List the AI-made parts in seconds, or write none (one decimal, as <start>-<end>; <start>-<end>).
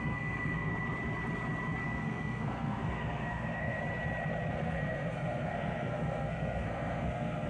0.0-0.7; 1.8-3.8; 4.5-7.5